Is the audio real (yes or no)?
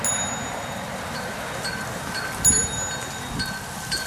yes